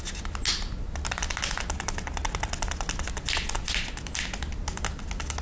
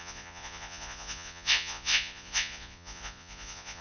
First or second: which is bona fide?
first